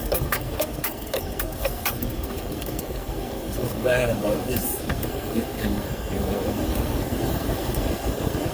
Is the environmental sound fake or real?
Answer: fake